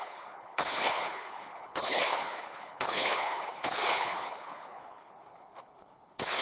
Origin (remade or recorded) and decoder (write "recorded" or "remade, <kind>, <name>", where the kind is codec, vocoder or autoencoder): remade, codec, HILCodec